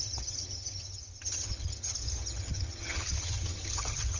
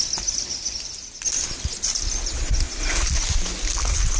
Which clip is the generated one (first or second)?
first